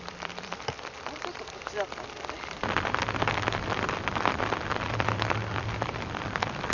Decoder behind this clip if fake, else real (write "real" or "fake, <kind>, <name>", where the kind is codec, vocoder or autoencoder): fake, vocoder, BigVGAN v2